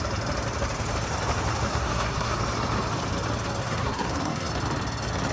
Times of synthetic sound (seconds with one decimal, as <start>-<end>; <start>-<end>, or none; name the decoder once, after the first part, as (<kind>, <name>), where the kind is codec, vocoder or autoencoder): 1.7-2.4 (codec, SNAC); 3.6-4.5